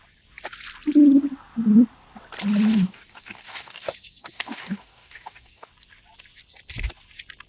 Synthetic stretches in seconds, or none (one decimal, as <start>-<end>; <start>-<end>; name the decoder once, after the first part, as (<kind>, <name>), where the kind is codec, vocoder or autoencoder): 2.7-5.7 (codec, DAC)